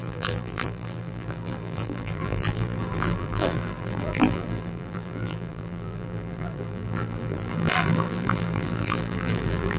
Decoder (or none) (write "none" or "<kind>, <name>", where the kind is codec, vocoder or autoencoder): vocoder, BigVGAN v2